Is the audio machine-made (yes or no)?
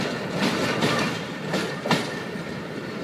no